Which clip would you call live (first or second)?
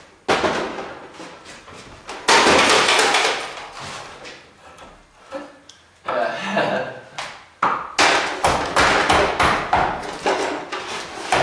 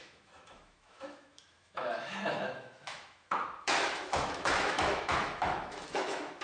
first